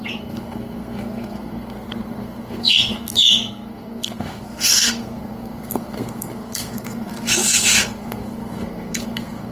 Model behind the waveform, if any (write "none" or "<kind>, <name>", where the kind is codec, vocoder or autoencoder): codec, SNAC